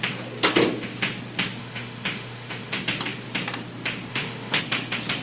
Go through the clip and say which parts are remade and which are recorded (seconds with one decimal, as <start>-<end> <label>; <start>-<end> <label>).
0.0-1.6 recorded; 1.6-2.8 remade; 2.8-4.1 recorded; 4.1-4.6 remade; 4.6-5.2 recorded